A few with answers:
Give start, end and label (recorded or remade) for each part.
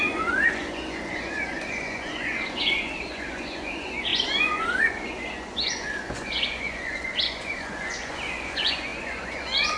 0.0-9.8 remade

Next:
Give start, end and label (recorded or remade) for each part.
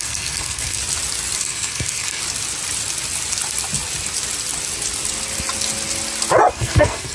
0.0-0.8 remade; 0.8-1.4 recorded; 1.4-2.2 remade; 2.2-6.5 recorded; 6.5-7.1 remade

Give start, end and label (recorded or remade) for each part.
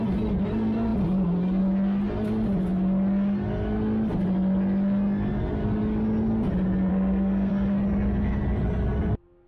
0.0-6.9 recorded; 6.9-7.5 remade; 7.5-9.5 recorded